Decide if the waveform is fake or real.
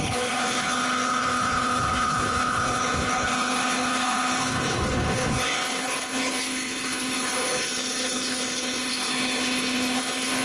fake